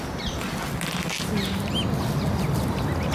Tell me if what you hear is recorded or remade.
recorded